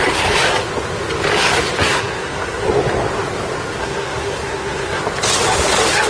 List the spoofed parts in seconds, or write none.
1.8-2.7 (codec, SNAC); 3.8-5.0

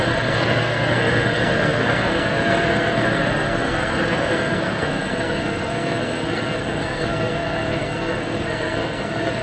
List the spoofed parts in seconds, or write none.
0.0-9.4 (codec, SNAC)

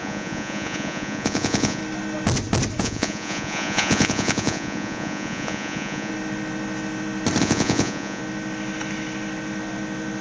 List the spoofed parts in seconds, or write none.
0.0-1.8 (vocoder, Vocos); 2.8-6.1; 7.4-8.2

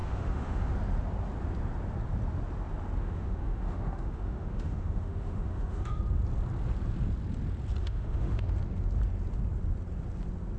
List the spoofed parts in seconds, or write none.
0.0-0.7 (autoencoder, DAC-VAE); 3.0-6.0; 7.8-8.5

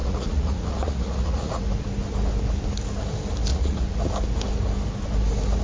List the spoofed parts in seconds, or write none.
0.0-1.6 (vocoder, Vocos); 3.5-4.0

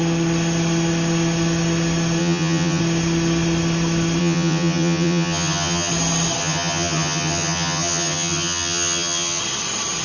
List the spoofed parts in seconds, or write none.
2.2-2.8 (vocoder, HiFi-GAN); 4.2-5.9; 6.4-9.4

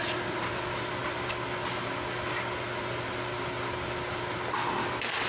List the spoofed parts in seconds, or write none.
none